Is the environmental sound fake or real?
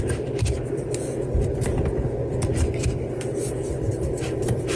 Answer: real